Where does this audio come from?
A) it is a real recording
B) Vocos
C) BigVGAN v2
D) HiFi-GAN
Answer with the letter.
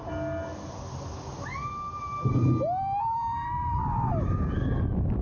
A